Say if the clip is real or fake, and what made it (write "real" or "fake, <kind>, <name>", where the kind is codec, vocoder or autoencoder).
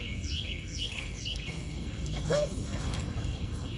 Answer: fake, codec, SNAC